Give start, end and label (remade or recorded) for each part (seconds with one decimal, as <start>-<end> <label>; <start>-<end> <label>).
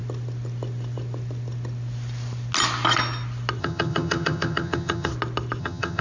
0.0-3.6 recorded; 3.6-5.1 remade; 5.1-5.6 recorded; 5.6-6.0 remade